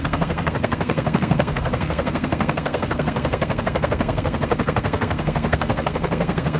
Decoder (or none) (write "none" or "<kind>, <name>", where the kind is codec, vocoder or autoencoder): codec, SNAC